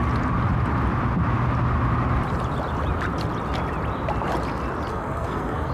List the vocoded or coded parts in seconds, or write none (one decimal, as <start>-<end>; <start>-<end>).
4.9-5.7